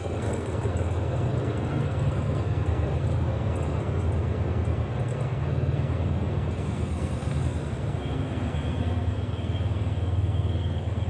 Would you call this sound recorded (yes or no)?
no